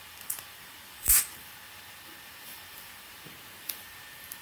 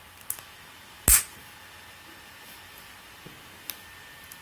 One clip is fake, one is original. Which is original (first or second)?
second